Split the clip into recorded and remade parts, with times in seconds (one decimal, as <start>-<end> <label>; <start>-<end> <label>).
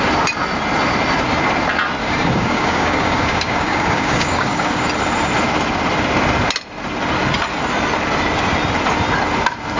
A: 0.0-2.0 recorded; 2.0-4.9 remade; 4.9-9.8 recorded